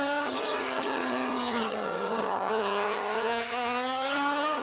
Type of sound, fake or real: fake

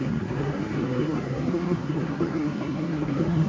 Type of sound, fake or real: fake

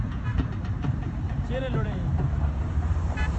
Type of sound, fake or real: fake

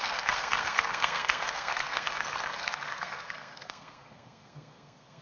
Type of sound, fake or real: fake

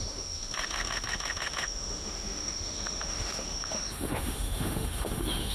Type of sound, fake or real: fake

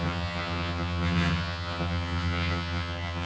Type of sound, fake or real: fake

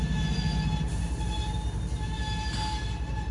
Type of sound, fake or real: real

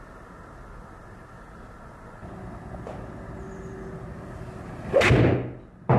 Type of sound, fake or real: real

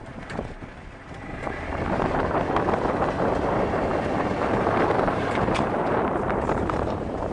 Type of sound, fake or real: fake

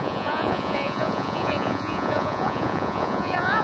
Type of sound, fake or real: fake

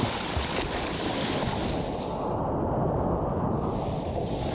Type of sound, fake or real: real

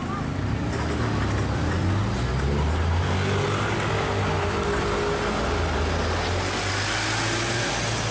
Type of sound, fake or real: real